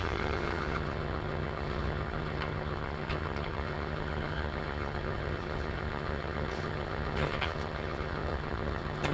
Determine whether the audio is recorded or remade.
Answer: remade